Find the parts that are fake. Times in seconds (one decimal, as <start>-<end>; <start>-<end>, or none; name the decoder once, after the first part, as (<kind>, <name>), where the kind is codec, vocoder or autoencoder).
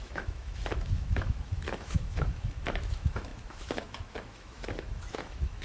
0.0-5.6 (autoencoder, DAC-VAE)